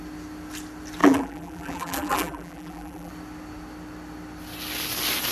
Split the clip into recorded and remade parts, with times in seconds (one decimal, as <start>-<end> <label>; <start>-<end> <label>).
0.0-1.0 recorded; 1.0-3.1 remade; 3.1-5.3 recorded